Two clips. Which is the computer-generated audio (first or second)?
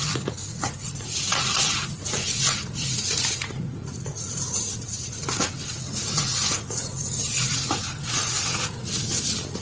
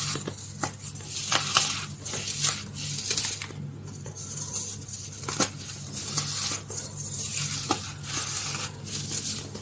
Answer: first